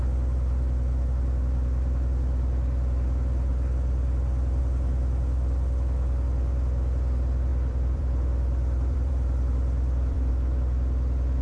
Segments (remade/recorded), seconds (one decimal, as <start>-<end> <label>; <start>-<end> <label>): 0.0-3.5 recorded; 3.5-4.6 remade; 4.6-7.5 recorded; 7.5-10.3 remade; 10.3-11.4 recorded